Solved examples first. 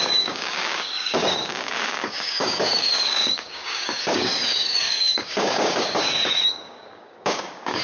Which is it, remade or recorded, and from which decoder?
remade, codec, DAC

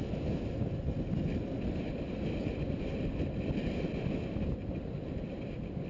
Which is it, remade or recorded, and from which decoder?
recorded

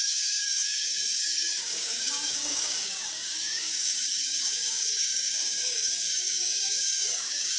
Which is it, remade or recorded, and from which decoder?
remade, codec, DAC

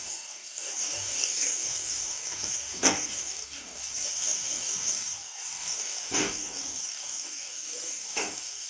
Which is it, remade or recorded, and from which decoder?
remade, codec, DAC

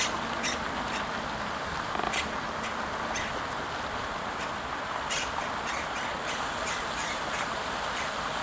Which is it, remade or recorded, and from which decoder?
recorded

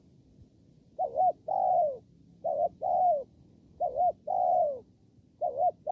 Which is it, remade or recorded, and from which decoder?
recorded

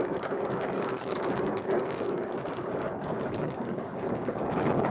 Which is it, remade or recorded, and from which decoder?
remade, codec, DAC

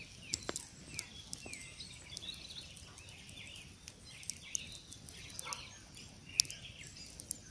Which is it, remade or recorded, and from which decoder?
recorded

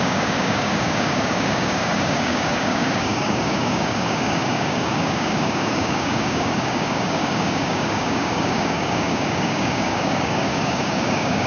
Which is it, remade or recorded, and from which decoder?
remade, codec, DAC